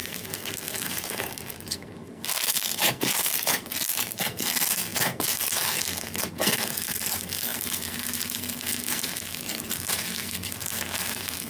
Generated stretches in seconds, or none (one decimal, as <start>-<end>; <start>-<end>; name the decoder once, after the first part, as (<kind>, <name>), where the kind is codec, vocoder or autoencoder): 0.0-11.5 (codec, SNAC)